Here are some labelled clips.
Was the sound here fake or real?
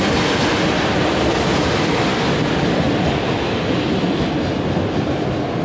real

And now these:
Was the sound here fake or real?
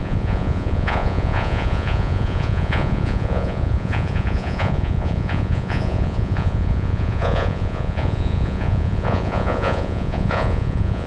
fake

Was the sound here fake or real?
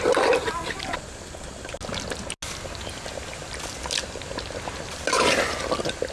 real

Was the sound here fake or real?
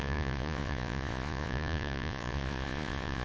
fake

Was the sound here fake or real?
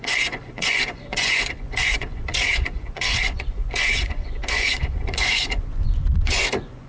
fake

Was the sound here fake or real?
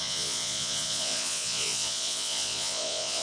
fake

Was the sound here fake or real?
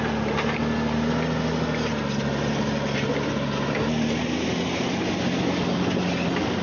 real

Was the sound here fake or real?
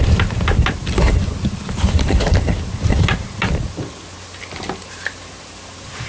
real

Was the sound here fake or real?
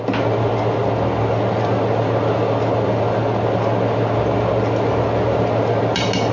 real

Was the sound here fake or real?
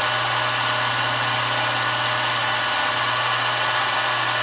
real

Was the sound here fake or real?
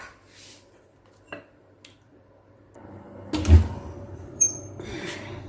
real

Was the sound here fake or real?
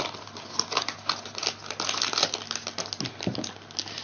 real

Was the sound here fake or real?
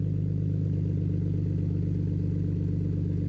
real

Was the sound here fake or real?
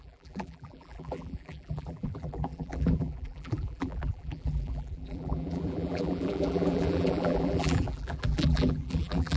fake